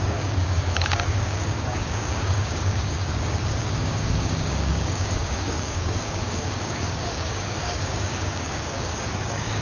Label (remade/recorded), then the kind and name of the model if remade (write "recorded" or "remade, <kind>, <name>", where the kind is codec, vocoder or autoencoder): remade, codec, DAC